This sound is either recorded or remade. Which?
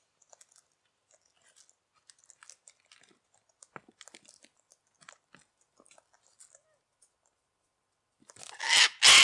recorded